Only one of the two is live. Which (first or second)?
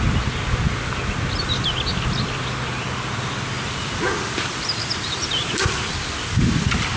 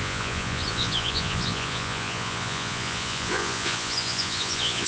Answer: first